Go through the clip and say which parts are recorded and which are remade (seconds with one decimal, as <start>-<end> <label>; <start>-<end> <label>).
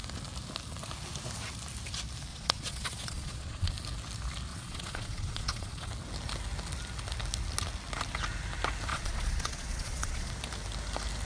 0.0-2.3 recorded; 2.3-3.7 remade; 3.7-4.5 recorded; 4.5-5.9 remade; 5.9-8.9 recorded; 8.9-10.3 remade; 10.3-11.3 recorded